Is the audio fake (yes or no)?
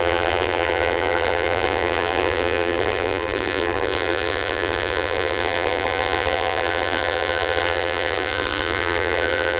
yes